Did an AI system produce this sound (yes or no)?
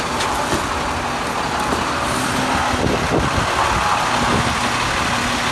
no